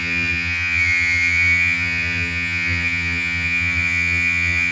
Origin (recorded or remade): remade